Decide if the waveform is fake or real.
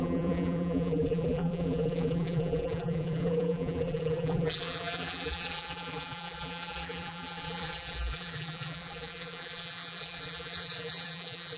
fake